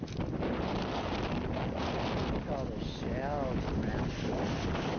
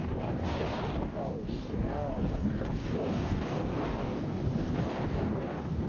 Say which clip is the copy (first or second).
second